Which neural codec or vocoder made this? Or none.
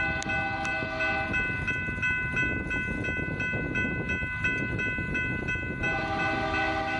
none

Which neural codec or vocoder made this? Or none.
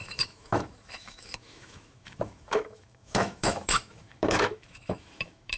autoencoder, DAC-VAE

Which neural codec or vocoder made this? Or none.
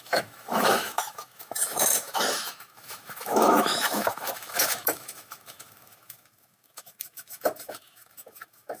autoencoder, DAC-VAE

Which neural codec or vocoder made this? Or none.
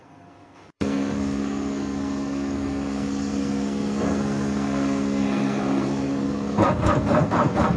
codec, SNAC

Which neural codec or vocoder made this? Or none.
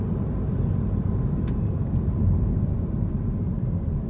none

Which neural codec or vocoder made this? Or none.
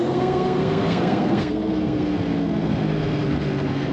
codec, SNAC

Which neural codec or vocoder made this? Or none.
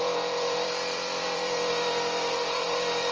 vocoder, BigVGAN v2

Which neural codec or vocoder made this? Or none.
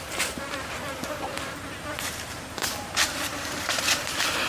vocoder, BigVGAN v2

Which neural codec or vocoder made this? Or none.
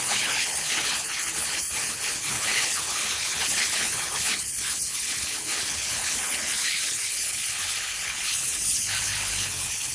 codec, HILCodec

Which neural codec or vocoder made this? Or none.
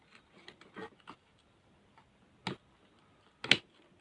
none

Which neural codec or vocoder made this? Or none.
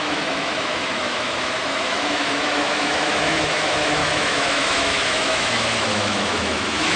autoencoder, DAC-VAE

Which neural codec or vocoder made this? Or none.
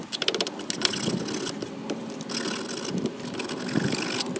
none